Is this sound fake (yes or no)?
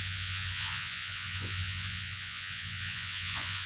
yes